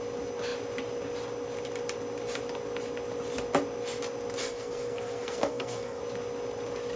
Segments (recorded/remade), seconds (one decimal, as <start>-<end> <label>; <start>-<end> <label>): 0.0-4.4 recorded; 4.4-6.0 remade; 6.0-7.0 recorded